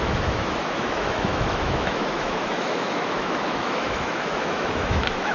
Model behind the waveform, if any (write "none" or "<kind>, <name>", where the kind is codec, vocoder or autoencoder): autoencoder, DAC-VAE